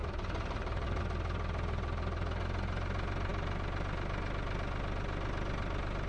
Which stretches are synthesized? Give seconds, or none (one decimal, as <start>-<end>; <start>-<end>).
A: 0.0-1.0